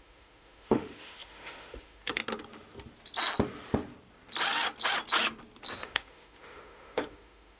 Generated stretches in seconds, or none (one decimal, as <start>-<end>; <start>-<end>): 0.0-2.2; 5.7-7.6